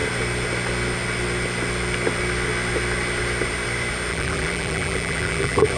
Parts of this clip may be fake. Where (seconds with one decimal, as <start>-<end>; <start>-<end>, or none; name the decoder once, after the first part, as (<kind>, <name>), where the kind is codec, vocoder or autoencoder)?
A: 4.1-5.8 (vocoder, BigVGAN v2)